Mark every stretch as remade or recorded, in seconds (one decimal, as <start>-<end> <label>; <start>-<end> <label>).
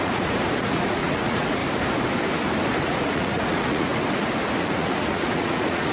0.0-1.6 remade; 1.6-2.8 recorded; 2.8-3.9 remade; 3.9-4.6 recorded; 4.6-5.9 remade